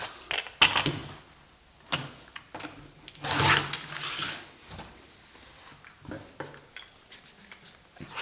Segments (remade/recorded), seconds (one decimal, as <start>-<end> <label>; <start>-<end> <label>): 0.0-8.2 recorded